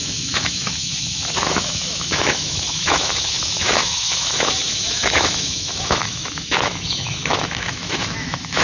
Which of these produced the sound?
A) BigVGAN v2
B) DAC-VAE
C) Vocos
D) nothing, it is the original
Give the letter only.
B